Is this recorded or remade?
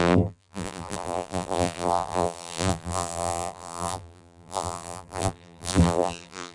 remade